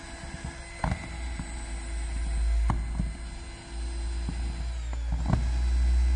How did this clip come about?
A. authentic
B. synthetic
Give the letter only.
A